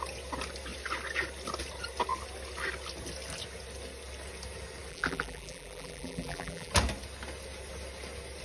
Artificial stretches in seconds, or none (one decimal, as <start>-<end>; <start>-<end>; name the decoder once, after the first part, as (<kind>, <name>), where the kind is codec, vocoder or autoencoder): 4.9-6.7 (vocoder, BigVGAN v2)